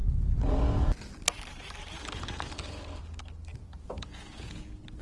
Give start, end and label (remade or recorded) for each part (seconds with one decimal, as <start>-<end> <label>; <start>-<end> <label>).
0.0-3.5 recorded; 3.5-4.6 remade; 4.6-5.0 recorded